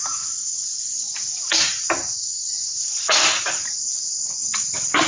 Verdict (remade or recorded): recorded